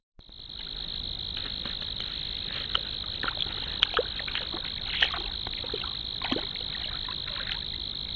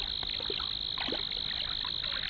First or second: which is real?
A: second